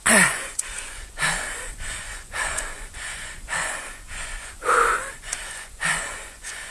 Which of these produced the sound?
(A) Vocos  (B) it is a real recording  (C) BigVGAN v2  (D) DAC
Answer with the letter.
A